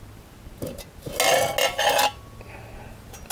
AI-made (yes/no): no